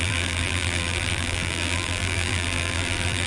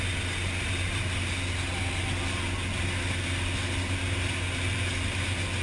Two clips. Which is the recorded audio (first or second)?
second